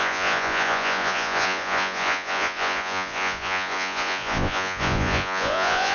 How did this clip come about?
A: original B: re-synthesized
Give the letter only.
B